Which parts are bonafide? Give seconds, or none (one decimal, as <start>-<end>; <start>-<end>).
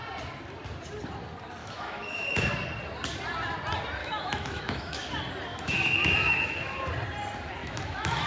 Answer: 0.0-1.6; 2.5-4.0; 5.1-5.5; 6.9-7.6